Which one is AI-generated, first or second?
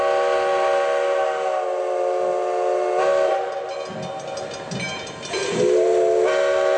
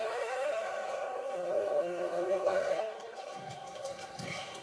second